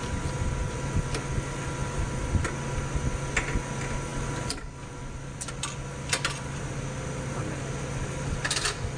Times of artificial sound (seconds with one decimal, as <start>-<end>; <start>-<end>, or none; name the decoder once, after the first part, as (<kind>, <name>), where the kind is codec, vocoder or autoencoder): none